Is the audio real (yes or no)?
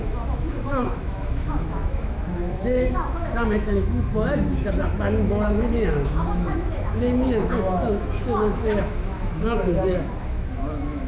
no